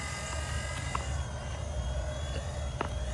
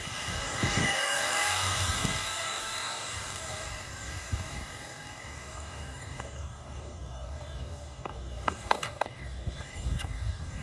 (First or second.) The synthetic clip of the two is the second